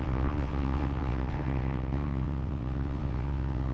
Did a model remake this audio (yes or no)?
yes